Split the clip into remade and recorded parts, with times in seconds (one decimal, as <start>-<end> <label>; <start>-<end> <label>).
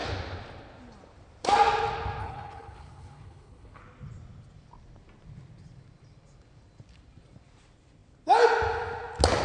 0.0-2.2 recorded; 2.2-3.8 remade; 3.8-9.4 recorded